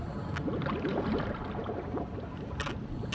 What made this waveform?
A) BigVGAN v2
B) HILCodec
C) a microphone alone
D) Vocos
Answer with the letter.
C